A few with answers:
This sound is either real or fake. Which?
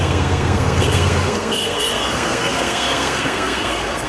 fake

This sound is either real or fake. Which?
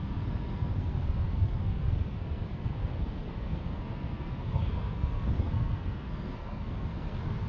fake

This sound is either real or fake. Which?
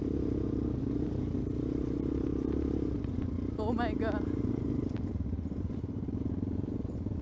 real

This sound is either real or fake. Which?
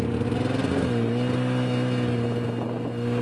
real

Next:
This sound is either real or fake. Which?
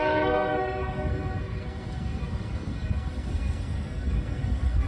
fake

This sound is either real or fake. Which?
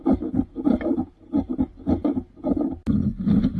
real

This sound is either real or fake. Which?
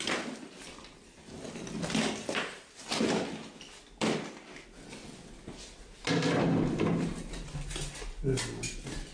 real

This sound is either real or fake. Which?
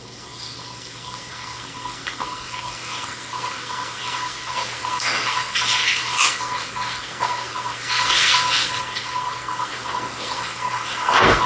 fake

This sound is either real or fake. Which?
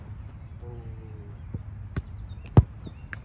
real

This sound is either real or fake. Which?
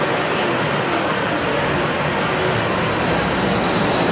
real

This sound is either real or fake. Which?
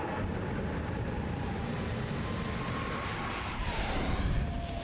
real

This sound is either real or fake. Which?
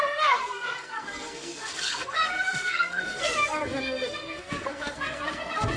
fake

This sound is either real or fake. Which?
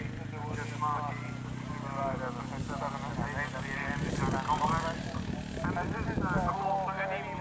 real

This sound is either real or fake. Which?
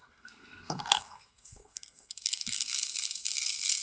fake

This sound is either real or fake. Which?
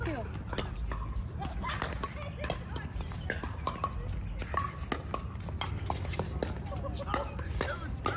real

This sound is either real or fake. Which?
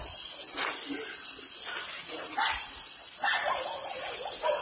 real